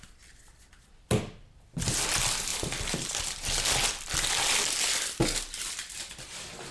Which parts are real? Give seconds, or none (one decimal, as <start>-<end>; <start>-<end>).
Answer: 0.0-6.7

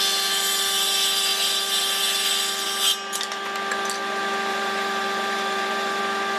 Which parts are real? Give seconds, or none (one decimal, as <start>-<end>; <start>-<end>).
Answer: 0.0-4.5; 6.0-6.4

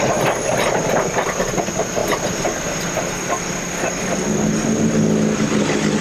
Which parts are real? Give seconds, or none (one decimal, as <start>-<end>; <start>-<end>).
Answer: 0.0-6.0

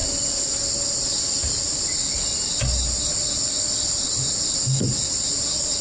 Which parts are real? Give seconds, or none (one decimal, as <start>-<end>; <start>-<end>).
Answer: 0.0-5.8